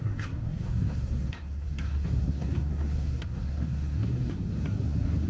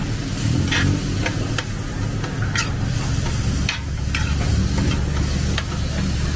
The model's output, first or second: first